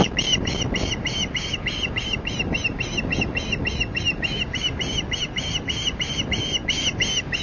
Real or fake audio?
real